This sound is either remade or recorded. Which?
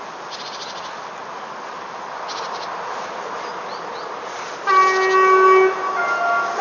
recorded